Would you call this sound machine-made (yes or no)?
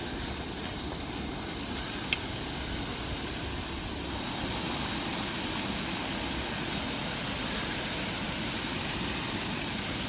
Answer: no